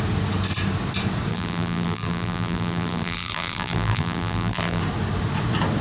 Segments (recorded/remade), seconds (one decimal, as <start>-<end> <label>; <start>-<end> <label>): 0.0-1.3 recorded; 1.3-4.8 remade; 4.8-5.8 recorded